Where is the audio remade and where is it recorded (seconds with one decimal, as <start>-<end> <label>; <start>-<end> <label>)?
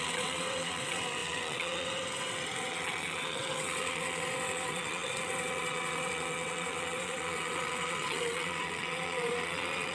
0.0-9.9 remade